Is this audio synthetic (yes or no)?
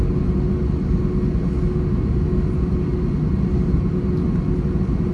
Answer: no